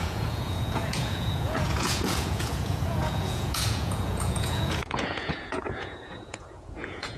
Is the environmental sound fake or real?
fake